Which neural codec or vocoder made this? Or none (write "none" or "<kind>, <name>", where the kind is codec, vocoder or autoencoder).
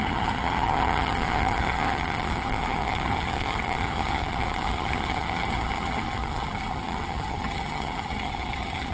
vocoder, HiFi-GAN